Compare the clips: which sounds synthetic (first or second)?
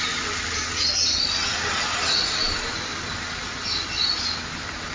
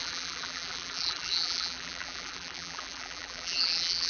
second